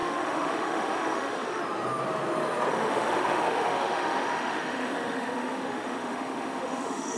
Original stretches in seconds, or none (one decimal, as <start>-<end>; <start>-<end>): 1.6-2.7